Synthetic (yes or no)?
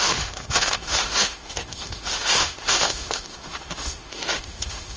yes